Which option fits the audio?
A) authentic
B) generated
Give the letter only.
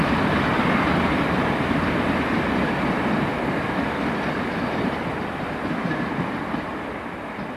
A